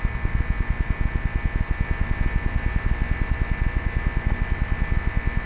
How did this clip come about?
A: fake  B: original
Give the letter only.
B